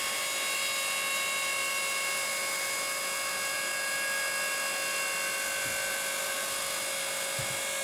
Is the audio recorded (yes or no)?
yes